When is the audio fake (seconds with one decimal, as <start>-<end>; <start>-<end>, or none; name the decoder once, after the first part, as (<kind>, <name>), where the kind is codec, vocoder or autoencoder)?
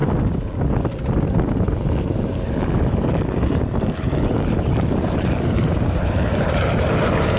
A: 2.0-7.4 (vocoder, BigVGAN v2)